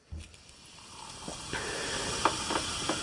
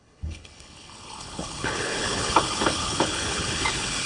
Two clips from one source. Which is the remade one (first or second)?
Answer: second